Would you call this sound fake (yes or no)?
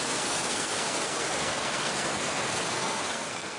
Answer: yes